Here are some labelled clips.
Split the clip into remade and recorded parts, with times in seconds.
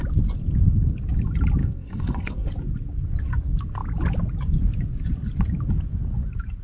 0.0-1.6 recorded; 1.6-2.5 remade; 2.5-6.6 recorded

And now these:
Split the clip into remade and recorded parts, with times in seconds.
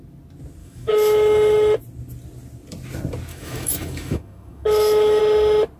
0.0-0.6 recorded; 0.6-1.8 remade; 1.8-3.3 recorded; 3.3-5.2 remade; 5.2-5.8 recorded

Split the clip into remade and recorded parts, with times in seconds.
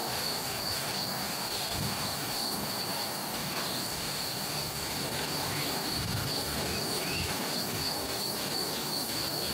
0.0-9.5 remade